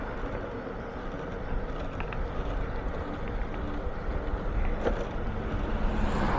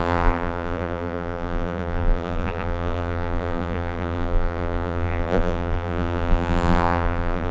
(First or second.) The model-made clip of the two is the second